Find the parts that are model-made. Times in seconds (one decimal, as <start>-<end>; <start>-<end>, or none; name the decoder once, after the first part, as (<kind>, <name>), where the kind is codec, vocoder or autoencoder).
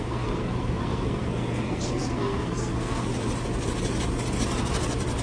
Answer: 0.0-3.1 (codec, SNAC)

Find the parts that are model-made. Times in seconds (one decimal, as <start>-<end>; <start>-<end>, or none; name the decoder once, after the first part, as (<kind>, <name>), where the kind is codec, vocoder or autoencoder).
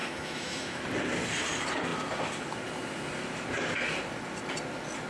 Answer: 0.0-0.8 (autoencoder, DAC-VAE)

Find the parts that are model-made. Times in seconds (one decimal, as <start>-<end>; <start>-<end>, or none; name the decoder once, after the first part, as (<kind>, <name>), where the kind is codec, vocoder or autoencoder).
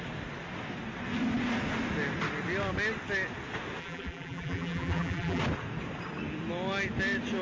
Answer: 3.8-5.4 (vocoder, BigVGAN v2)